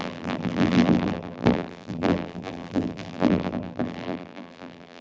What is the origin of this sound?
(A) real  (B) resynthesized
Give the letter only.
B